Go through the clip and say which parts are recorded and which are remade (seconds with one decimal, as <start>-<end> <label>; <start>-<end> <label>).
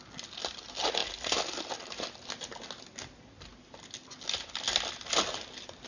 0.0-5.9 recorded